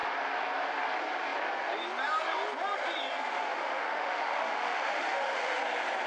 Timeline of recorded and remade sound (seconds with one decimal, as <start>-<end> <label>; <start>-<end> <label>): 0.0-3.3 recorded; 3.3-5.5 remade; 5.5-6.1 recorded